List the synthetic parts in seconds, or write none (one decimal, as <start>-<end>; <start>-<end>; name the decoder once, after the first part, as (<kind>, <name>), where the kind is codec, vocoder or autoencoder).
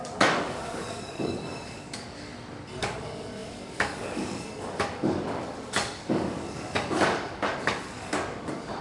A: 0.0-2.3 (codec, DAC); 2.8-8.8